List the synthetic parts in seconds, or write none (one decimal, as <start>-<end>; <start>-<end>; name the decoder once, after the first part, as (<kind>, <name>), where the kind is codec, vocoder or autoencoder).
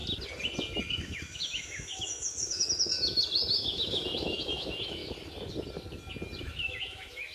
0.8-2.9 (autoencoder, DAC-VAE); 3.5-5.0; 6.4-7.3